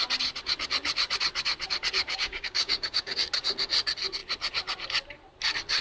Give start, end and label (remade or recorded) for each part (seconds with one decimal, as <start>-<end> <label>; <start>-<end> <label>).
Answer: 0.0-2.1 recorded; 2.1-3.1 remade; 3.1-5.8 recorded